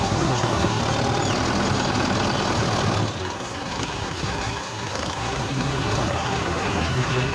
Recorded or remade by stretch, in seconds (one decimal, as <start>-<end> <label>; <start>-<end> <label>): 0.0-0.8 remade; 0.8-3.2 recorded; 3.2-7.3 remade